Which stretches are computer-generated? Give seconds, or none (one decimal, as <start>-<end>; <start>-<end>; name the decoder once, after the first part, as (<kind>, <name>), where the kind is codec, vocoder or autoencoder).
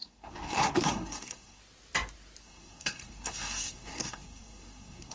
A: 0.0-1.6 (codec, SNAC); 2.4-5.1